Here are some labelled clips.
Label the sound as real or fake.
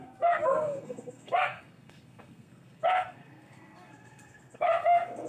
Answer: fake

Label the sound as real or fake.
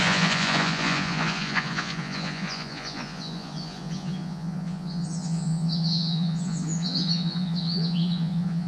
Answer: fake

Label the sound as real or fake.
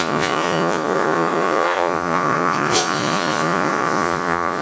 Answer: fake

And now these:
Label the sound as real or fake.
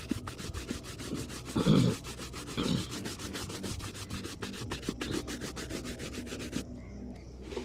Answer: real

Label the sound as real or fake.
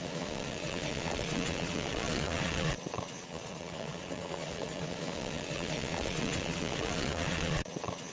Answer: fake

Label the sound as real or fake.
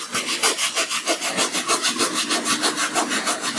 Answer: real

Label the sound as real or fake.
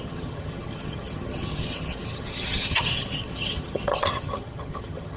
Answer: fake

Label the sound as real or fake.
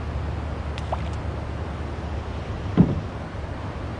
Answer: real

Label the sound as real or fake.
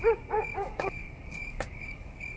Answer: fake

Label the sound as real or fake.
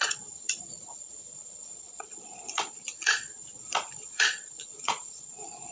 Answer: fake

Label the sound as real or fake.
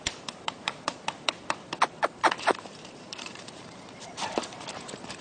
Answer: fake